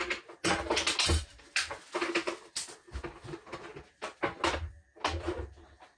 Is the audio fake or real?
real